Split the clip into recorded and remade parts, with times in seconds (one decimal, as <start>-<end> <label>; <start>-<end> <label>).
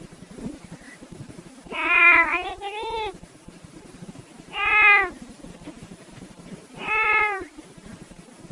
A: 0.0-2.3 remade; 2.3-3.1 recorded; 3.1-4.7 remade; 4.7-6.1 recorded; 6.1-8.5 remade